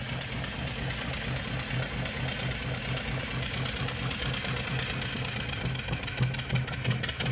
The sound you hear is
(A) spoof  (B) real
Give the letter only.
B